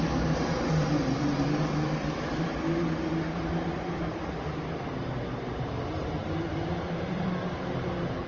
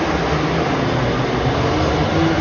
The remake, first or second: first